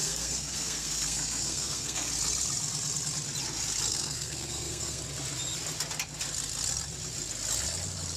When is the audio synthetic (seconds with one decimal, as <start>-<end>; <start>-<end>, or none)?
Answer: 0.0-2.1; 3.9-5.0